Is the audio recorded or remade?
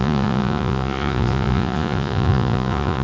remade